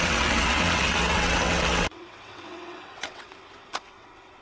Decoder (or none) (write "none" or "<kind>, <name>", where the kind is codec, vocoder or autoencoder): vocoder, WaveNeXt